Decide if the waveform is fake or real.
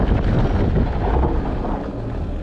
real